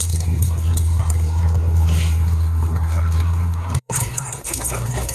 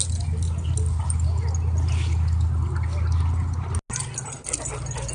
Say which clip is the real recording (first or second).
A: second